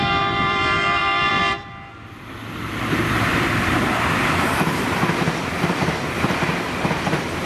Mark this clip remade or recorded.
remade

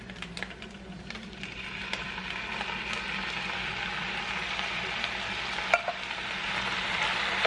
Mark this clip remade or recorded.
recorded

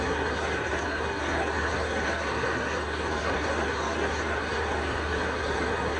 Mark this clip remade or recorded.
remade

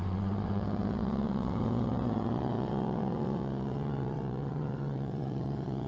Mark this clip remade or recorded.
remade